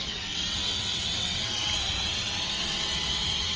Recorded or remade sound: remade